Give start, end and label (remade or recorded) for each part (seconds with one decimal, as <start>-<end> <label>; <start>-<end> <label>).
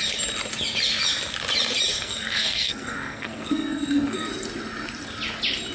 0.0-1.9 recorded; 1.9-4.3 remade; 4.3-5.7 recorded